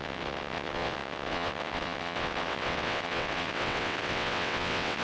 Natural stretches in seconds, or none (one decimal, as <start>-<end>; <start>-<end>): none